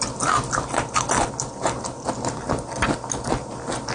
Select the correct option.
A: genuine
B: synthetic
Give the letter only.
A